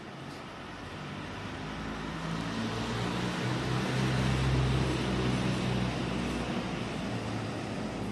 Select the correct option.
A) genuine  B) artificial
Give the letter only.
A